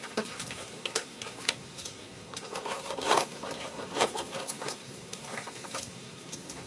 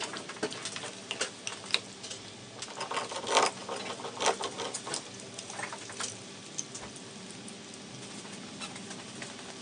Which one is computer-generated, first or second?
first